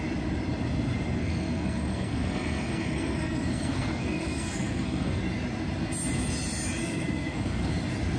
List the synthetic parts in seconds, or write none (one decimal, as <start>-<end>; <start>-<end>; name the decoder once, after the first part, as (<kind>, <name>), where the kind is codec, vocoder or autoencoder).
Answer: 1.2-5.2 (codec, SNAC); 6.8-7.7